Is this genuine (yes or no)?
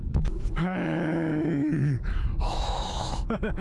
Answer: no